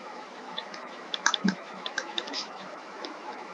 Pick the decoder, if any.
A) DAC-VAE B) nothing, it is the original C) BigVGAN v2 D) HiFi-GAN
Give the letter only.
A